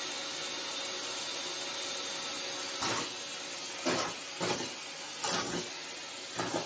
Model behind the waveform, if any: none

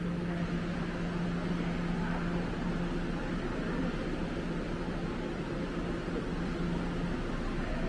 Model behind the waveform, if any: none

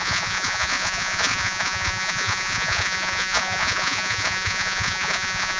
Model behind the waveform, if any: vocoder, Vocos